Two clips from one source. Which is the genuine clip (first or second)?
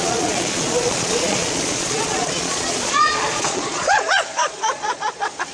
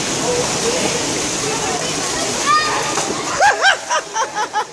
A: second